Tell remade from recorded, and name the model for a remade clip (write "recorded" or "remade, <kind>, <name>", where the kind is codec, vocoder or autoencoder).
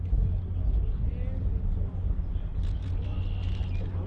recorded